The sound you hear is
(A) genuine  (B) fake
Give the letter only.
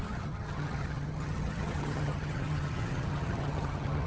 B